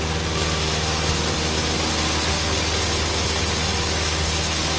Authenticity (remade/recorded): recorded